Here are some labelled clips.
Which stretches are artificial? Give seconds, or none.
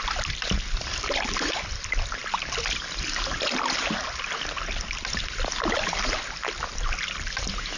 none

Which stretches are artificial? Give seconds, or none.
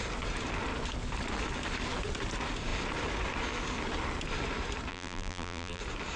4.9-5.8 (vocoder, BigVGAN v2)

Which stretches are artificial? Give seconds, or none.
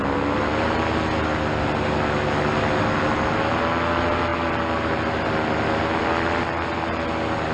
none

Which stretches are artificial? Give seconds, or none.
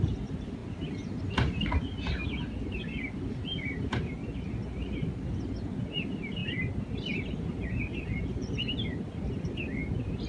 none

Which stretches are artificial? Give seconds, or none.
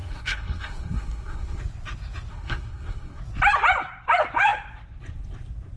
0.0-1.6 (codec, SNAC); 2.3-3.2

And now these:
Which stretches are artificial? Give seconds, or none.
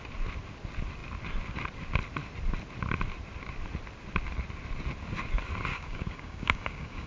5.7-7.1 (codec, DAC)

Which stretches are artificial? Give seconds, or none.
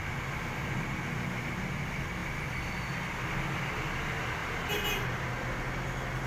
none